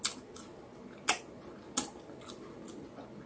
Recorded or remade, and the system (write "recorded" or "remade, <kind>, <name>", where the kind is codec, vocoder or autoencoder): recorded